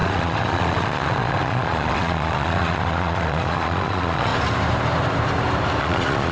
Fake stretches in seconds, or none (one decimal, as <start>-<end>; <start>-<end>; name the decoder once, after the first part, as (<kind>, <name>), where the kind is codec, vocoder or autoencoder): 0.0-4.3 (vocoder, Vocos); 5.8-6.3